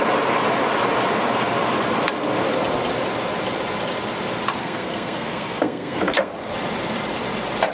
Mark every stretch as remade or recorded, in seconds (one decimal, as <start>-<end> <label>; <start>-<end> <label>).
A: 0.0-4.6 recorded; 4.6-6.3 remade; 6.3-7.7 recorded

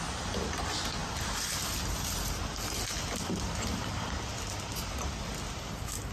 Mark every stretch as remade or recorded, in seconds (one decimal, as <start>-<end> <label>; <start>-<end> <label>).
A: 0.0-6.1 recorded

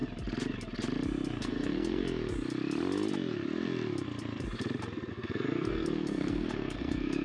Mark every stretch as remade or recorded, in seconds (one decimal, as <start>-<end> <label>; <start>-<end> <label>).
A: 0.0-1.4 recorded; 1.4-2.0 remade; 2.0-5.1 recorded; 5.1-7.2 remade

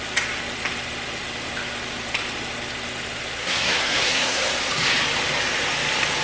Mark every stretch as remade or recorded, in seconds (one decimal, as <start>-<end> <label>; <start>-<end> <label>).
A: 0.0-3.4 recorded; 3.4-4.4 remade; 4.4-6.2 recorded